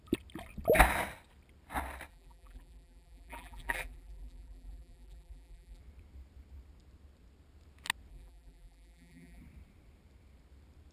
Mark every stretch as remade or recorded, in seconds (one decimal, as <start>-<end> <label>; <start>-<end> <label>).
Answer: 0.0-2.1 recorded; 2.1-5.8 remade; 5.8-8.1 recorded; 8.1-9.4 remade; 9.4-10.9 recorded